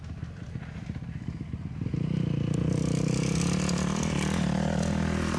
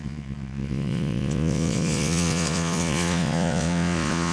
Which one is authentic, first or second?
first